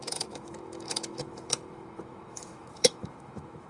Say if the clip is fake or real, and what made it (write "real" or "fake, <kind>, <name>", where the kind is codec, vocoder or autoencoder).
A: fake, autoencoder, DAC-VAE